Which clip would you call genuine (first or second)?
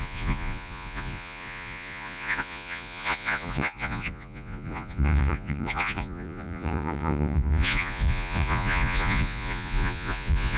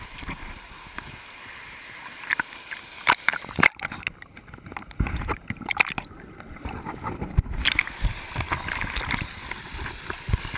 second